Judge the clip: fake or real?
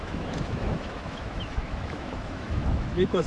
fake